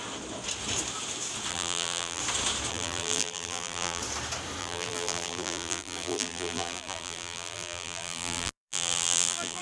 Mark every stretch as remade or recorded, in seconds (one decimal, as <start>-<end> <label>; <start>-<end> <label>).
0.0-1.5 recorded; 1.5-2.2 remade; 2.2-2.7 recorded; 2.7-4.0 remade; 4.0-4.6 recorded; 4.6-9.6 remade